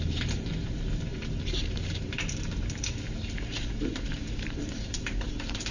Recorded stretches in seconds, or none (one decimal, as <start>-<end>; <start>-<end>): none